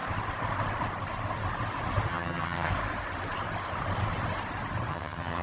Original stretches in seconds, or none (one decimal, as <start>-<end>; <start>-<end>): 0.0-2.1; 2.7-4.9

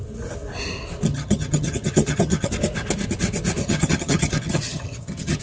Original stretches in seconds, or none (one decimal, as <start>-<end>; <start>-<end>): 0.0-1.1; 2.5-3.6

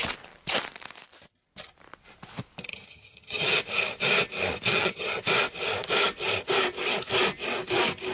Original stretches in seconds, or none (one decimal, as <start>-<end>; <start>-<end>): 0.0-2.7; 3.6-4.7; 5.2-8.1